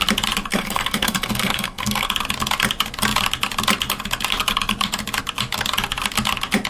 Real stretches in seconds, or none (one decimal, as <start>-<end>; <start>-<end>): 0.0-0.5; 2.1-6.7